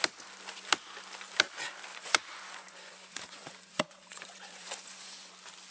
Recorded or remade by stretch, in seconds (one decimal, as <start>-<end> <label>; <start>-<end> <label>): 0.0-1.9 recorded; 1.9-5.3 remade; 5.3-5.7 recorded